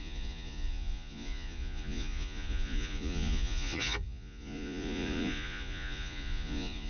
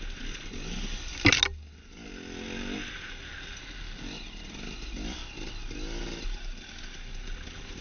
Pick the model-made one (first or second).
first